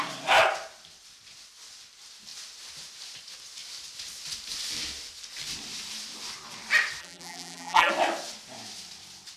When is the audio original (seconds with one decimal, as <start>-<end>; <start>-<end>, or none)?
0.0-7.0; 7.9-9.4